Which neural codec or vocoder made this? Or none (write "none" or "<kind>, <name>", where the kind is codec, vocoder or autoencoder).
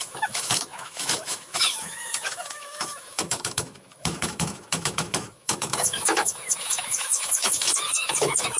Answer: autoencoder, DAC-VAE